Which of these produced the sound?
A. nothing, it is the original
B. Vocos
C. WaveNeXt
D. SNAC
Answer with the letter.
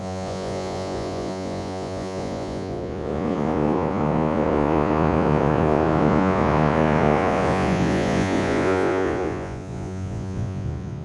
B